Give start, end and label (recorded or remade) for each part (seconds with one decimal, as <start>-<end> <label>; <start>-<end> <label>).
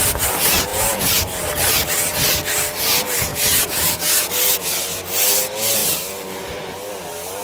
0.0-0.7 recorded; 0.7-1.2 remade; 1.2-3.3 recorded; 3.3-4.3 remade; 4.3-7.4 recorded